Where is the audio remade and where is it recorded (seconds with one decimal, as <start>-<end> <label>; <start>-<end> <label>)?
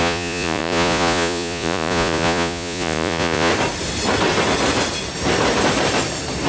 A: 0.0-3.5 remade; 3.5-6.5 recorded